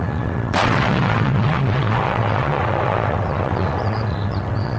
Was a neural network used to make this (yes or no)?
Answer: yes